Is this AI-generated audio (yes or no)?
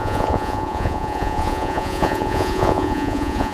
yes